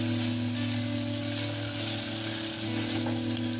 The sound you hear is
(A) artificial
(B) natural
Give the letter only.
B